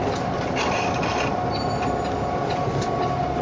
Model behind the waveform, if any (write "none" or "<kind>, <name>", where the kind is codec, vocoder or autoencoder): none